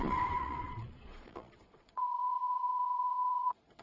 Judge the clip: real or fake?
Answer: fake